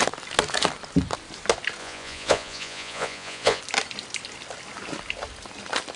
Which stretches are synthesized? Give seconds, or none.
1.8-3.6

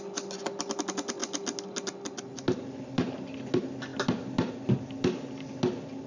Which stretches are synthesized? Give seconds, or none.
none

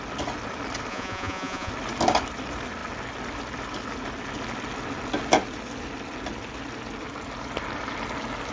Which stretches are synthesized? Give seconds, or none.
0.9-1.7

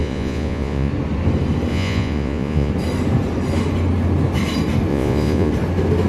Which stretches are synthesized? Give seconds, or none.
0.0-0.9; 1.7-2.7; 4.9-5.5

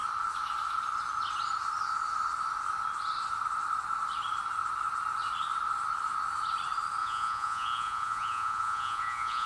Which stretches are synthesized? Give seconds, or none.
7.0-9.5

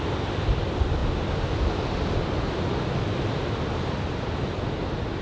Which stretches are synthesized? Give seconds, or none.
none

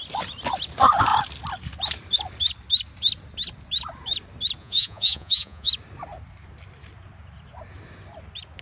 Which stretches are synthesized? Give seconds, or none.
4.6-5.7

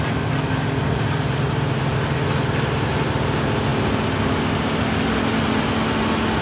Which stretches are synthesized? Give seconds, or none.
none